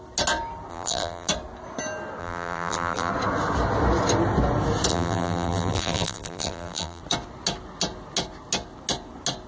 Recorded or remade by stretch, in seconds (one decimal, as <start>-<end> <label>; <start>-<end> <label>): 0.0-0.7 recorded; 0.7-1.3 remade; 1.3-2.2 recorded; 2.2-3.1 remade; 3.1-4.9 recorded; 4.9-7.0 remade; 7.0-9.5 recorded

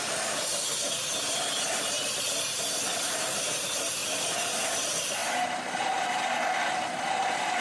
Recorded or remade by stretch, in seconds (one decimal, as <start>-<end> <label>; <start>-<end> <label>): 0.0-0.5 remade; 0.5-3.1 recorded; 3.1-7.6 remade

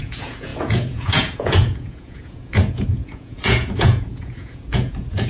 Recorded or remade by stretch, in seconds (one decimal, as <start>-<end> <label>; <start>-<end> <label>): 0.0-5.3 remade

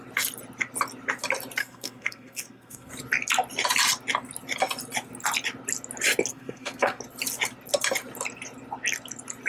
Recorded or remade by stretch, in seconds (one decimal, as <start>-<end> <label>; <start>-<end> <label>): 0.0-1.6 recorded; 1.6-2.9 remade; 2.9-6.3 recorded; 6.3-7.0 remade; 7.0-9.5 recorded

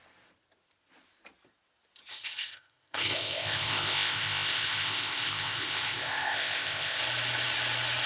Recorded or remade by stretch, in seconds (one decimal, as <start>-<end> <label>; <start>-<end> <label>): 0.0-2.1 recorded; 2.1-7.0 remade; 7.0-8.1 recorded